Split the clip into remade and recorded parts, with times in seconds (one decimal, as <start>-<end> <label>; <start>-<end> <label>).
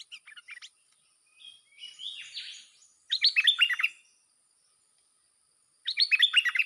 0.0-6.7 recorded